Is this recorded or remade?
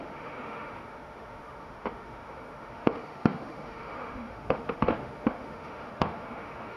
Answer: remade